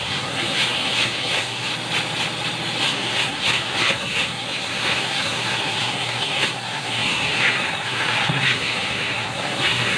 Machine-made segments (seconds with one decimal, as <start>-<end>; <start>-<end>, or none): 0.0-1.7; 2.8-10.0